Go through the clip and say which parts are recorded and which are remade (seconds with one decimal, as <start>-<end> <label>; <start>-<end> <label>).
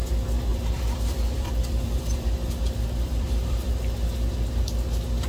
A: 0.0-0.5 recorded; 0.5-3.7 remade; 3.7-5.3 recorded